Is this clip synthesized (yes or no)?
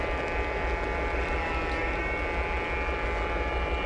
no